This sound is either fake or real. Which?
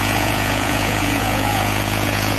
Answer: fake